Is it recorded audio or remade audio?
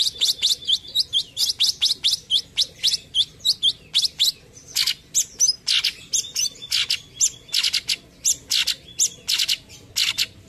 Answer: recorded